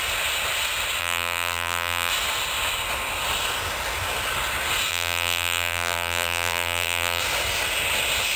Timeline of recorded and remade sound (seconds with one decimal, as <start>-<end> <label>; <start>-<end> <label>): 0.0-1.0 recorded; 1.0-2.1 remade; 2.1-4.9 recorded; 4.9-7.2 remade; 7.2-8.4 recorded